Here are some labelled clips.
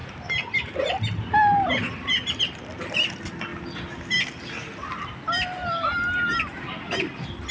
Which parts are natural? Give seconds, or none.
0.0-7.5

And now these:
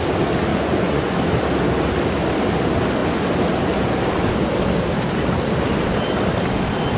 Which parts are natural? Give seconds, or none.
0.0-0.5; 1.2-7.0

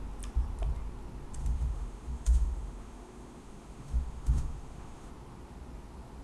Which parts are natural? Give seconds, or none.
0.0-1.4; 5.1-6.2

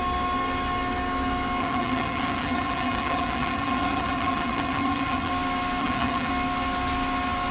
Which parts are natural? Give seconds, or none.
0.0-1.6; 5.3-5.8; 6.3-7.5

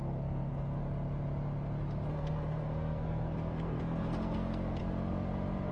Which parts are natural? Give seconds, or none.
0.8-2.1; 4.8-5.7

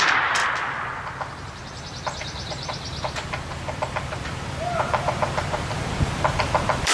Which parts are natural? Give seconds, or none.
0.4-1.2

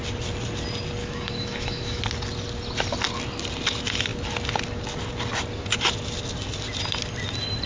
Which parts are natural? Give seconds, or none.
0.0-1.0; 2.0-7.7